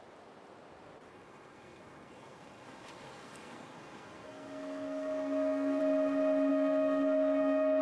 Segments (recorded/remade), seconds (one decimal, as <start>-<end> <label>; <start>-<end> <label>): 0.0-1.1 recorded; 1.1-5.8 remade; 5.8-6.5 recorded; 6.5-7.8 remade